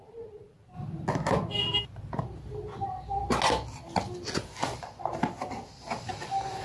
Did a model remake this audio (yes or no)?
no